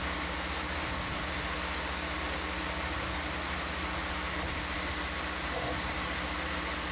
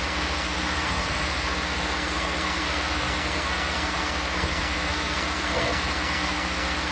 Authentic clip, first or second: first